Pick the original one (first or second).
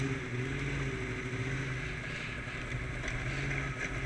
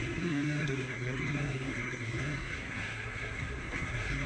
first